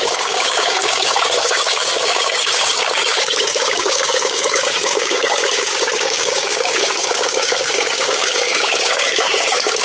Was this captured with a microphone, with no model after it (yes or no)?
no